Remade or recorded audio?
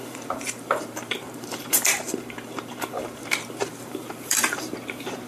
remade